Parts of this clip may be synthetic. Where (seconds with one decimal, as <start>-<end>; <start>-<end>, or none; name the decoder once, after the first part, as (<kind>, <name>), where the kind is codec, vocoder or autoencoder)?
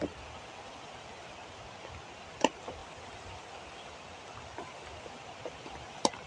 2.8-4.9 (vocoder, BigVGAN v2)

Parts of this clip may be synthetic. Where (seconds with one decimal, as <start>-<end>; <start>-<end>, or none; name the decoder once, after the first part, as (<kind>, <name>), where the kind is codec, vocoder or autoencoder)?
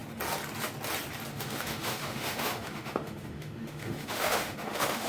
1.3-5.1 (autoencoder, DAC-VAE)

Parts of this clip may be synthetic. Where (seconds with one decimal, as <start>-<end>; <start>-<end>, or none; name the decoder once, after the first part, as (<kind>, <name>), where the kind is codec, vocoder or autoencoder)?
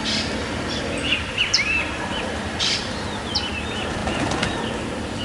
0.4-3.5 (vocoder, BigVGAN v2)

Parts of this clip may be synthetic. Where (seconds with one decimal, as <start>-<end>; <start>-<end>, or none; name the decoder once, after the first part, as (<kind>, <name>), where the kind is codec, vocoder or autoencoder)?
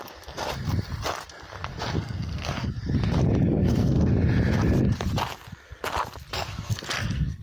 1.7-2.7 (codec, SNAC); 3.5-4.1; 6.3-7.4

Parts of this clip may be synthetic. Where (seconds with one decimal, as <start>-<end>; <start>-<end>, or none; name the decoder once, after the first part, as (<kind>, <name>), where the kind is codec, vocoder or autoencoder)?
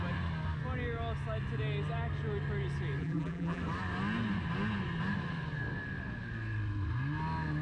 3.0-3.6 (vocoder, BigVGAN v2)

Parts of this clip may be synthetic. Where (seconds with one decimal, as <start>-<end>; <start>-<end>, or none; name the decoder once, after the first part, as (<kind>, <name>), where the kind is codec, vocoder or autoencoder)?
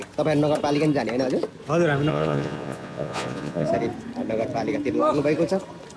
2.1-3.7 (vocoder, Vocos)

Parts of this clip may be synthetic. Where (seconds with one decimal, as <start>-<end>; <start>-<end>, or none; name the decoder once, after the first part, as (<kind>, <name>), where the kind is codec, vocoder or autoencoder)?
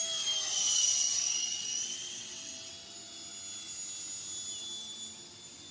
0.5-2.7 (vocoder, WaveNeXt)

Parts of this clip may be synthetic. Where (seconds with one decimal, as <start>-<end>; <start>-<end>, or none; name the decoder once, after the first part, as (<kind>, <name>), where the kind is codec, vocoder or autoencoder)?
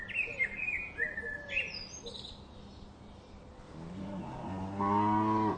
none